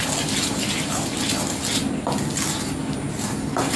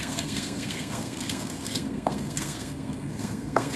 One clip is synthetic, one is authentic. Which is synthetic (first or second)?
second